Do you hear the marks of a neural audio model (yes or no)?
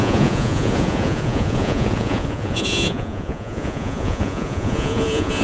yes